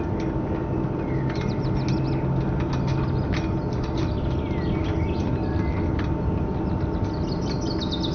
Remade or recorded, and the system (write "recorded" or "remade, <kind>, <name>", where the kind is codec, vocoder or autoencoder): recorded